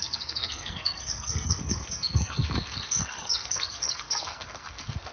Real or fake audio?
fake